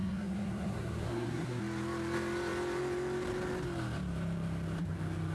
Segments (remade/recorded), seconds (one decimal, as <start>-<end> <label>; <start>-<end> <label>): 0.0-1.6 remade; 1.6-5.3 recorded